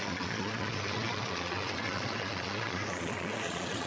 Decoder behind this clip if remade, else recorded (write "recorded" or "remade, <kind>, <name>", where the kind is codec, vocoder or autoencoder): remade, vocoder, Vocos